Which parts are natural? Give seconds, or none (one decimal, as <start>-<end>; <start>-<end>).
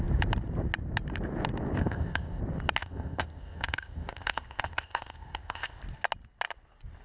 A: 0.0-1.8; 2.4-2.8; 5.8-7.0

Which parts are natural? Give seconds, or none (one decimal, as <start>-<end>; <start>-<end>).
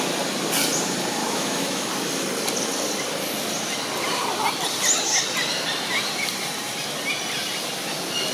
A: 0.0-1.2; 1.9-8.3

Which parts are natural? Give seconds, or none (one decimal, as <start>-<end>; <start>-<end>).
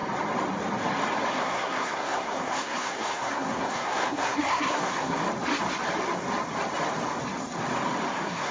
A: 0.0-1.3; 5.2-8.1